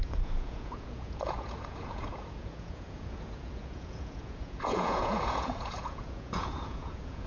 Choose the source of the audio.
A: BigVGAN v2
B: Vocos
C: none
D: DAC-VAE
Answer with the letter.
B